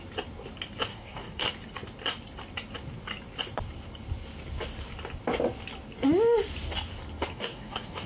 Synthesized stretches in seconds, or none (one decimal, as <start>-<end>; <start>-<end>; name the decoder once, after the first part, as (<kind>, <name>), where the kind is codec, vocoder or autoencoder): 0.9-1.5 (codec, DAC); 7.3-8.1